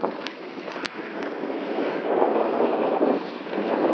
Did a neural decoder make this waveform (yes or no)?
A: yes